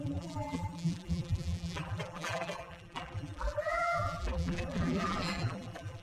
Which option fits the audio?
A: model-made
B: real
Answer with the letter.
A